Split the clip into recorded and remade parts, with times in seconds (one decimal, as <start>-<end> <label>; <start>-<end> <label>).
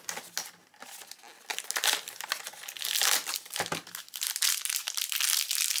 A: 0.0-5.8 recorded